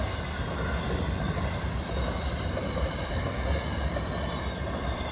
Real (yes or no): no